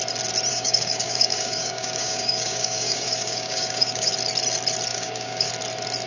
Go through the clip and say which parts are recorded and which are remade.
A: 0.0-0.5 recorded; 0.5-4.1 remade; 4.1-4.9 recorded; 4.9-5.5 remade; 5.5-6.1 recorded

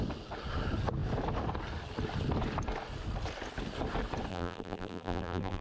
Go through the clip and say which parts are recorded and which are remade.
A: 0.0-4.3 recorded; 4.3-5.6 remade

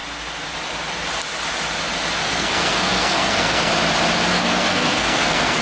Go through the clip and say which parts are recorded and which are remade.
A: 0.0-2.2 recorded; 2.2-3.7 remade; 3.7-4.3 recorded; 4.3-5.6 remade

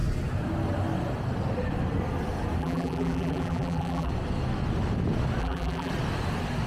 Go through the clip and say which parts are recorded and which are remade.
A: 0.0-2.6 recorded; 2.6-4.1 remade; 4.1-5.4 recorded; 5.4-5.9 remade; 5.9-6.7 recorded

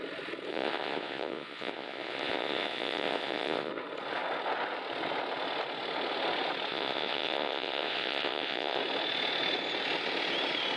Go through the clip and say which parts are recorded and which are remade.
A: 0.0-0.5 recorded; 0.5-3.7 remade; 3.7-6.7 recorded; 6.7-8.8 remade; 8.8-10.8 recorded

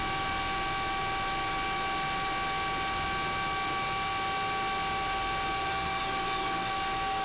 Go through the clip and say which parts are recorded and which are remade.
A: 0.0-5.7 recorded; 5.7-6.7 remade; 6.7-7.2 recorded

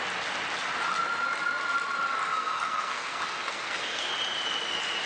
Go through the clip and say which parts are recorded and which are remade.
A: 0.0-2.2 recorded; 2.2-4.1 remade; 4.1-5.1 recorded